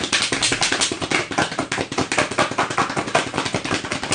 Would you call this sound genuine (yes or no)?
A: yes